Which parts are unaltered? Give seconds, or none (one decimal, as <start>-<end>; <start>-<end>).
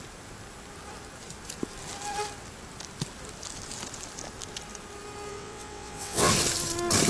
0.0-5.3; 6.3-7.1